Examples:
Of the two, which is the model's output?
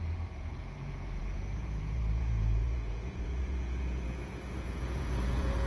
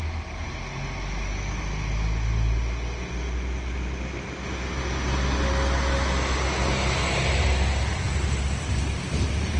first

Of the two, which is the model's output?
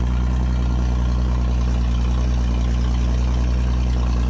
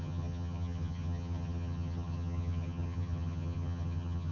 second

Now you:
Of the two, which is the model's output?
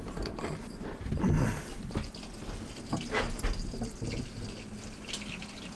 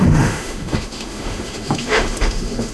second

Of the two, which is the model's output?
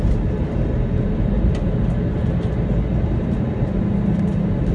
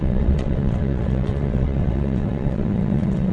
second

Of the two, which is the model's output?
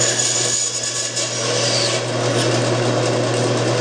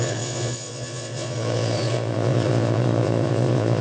second